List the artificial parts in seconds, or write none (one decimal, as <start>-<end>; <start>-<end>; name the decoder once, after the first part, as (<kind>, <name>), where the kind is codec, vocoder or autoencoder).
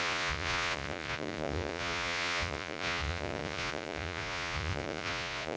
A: 0.0-5.6 (vocoder, Vocos)